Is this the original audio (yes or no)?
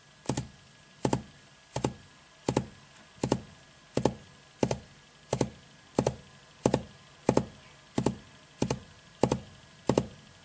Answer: yes